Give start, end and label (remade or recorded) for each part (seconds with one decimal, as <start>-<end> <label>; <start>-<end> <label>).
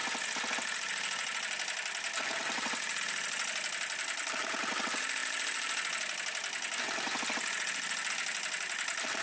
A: 0.0-9.2 recorded